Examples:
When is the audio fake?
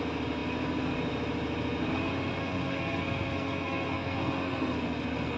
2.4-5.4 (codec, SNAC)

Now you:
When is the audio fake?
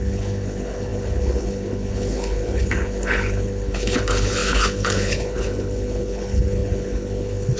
0.0-7.6 (codec, HILCodec)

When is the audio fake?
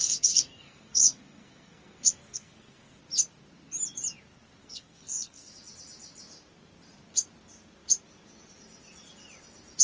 0.0-3.0 (codec, SNAC); 4.6-5.5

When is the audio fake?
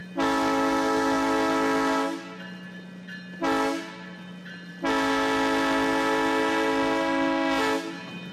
none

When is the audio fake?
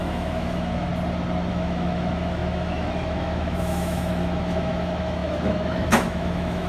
0.0-0.9 (autoencoder, DAC-VAE); 1.5-6.7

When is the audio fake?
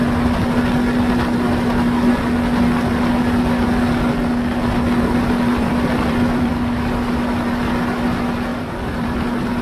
5.5-6.5 (vocoder, BigVGAN v2); 8.5-9.6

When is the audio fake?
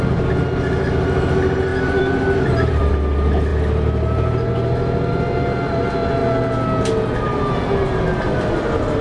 1.7-2.9 (vocoder, BigVGAN v2)